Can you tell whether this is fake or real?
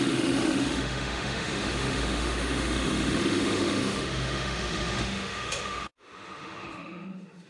fake